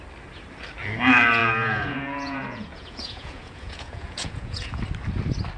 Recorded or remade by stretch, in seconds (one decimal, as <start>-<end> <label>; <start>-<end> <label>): 0.0-1.4 recorded; 1.4-4.8 remade; 4.8-5.6 recorded